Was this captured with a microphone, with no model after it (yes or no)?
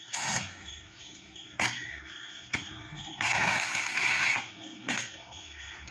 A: no